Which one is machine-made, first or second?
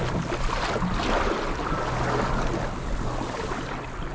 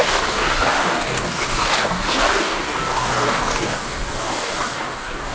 second